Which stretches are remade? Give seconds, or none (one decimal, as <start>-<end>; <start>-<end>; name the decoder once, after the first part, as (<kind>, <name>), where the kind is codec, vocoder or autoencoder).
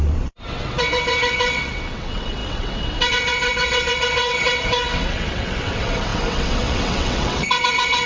0.0-8.1 (vocoder, WaveNeXt)